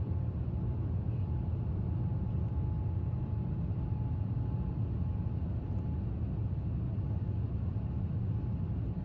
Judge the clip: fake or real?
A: real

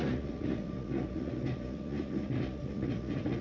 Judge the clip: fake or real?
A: fake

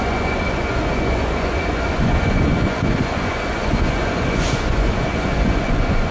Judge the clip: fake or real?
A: fake